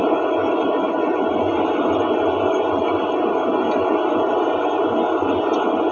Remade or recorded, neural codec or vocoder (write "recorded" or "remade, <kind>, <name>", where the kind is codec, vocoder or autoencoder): recorded